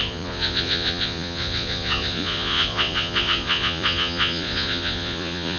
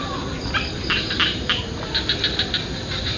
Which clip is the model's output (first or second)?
first